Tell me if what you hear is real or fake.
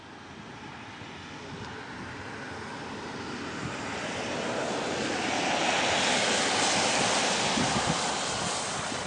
real